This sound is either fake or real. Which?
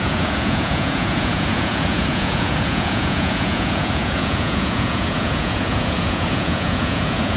fake